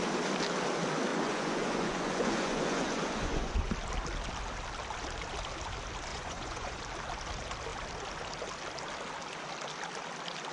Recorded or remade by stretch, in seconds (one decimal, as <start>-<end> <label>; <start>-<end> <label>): 0.0-1.1 recorded; 1.1-3.7 remade; 3.7-6.1 recorded; 6.1-6.8 remade; 6.8-10.5 recorded